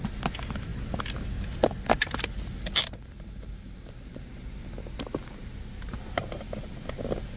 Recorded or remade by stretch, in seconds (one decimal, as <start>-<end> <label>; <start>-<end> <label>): 0.0-7.4 recorded